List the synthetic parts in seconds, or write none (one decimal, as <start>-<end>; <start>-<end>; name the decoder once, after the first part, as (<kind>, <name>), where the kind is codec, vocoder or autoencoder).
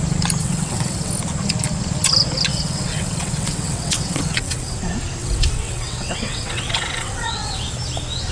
0.4-1.1 (vocoder, WaveNeXt); 2.5-4.8; 5.2-7.6